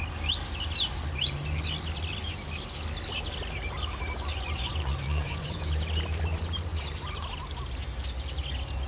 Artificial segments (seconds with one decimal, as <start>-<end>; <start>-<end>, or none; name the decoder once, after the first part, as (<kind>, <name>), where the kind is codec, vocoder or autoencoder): 4.3-5.6 (vocoder, Vocos)